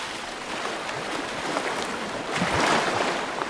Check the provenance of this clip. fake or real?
real